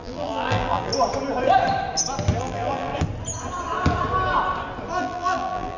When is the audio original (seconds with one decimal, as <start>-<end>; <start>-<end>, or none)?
0.9-2.4; 2.9-5.0